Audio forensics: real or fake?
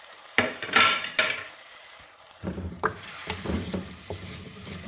fake